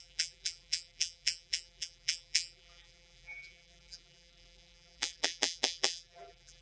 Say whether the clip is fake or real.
fake